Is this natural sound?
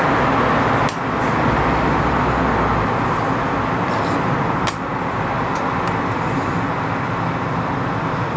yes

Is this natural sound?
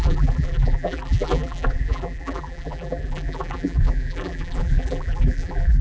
no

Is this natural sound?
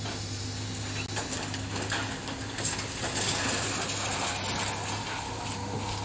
yes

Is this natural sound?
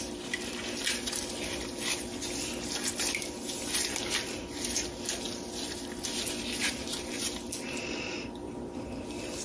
yes